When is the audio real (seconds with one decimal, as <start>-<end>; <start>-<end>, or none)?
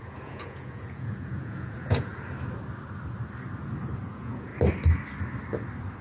2.1-4.0; 4.5-6.0